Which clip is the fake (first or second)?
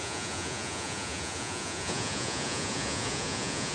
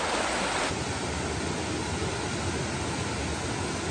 first